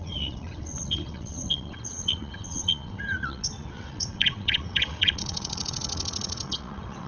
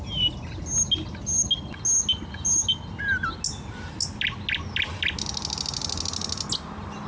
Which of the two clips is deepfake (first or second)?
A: first